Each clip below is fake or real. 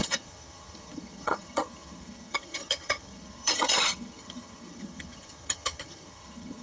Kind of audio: fake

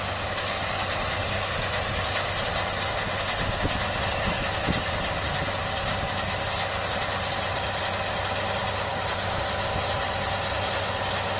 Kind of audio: real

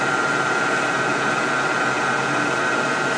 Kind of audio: real